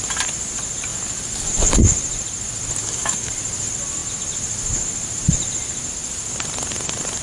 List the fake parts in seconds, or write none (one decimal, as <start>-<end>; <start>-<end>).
2.8-3.3